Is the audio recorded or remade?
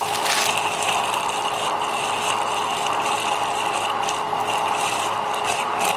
recorded